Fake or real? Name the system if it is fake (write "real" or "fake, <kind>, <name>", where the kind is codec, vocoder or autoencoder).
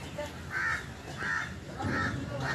real